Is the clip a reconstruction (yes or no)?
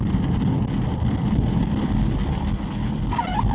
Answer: no